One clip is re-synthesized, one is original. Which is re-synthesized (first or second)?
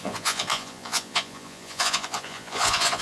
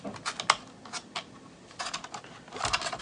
first